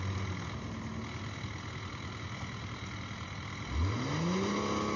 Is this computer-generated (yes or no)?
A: no